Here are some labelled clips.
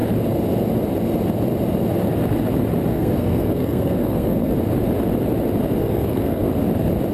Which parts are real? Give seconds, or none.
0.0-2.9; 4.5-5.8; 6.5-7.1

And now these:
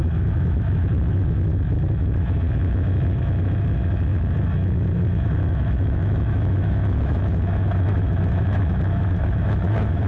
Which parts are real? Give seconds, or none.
none

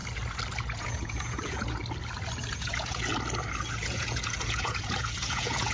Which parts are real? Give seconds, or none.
0.0-0.6; 1.8-2.5; 3.1-3.7

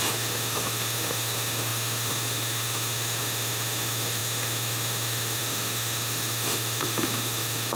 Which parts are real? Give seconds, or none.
none

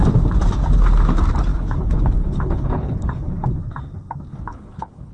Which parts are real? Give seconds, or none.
0.0-1.5; 3.5-4.3